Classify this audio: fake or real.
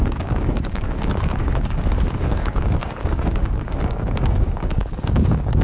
fake